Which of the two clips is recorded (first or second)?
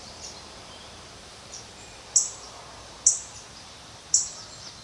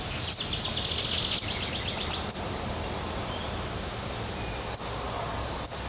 second